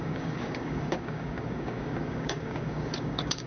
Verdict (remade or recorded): remade